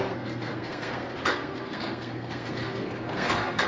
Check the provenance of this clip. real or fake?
fake